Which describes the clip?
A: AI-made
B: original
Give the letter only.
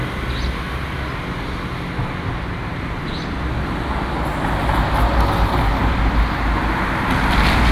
B